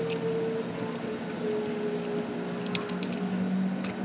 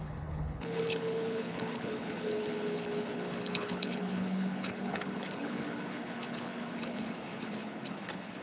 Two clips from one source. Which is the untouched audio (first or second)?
first